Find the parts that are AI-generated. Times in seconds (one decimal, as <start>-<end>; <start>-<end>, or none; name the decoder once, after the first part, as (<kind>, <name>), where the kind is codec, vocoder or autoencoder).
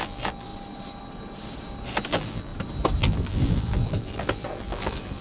0.0-0.5 (vocoder, BigVGAN v2); 2.1-2.5; 3.0-5.2